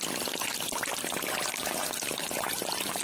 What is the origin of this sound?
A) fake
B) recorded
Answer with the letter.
B